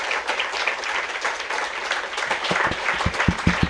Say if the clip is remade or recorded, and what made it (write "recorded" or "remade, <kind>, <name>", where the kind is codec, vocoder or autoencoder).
recorded